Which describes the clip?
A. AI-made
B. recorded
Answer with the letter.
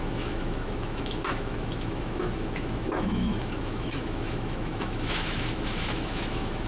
A